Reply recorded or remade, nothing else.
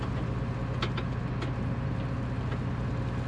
recorded